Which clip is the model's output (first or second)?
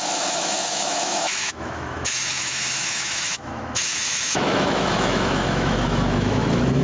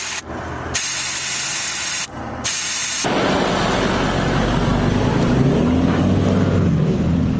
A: first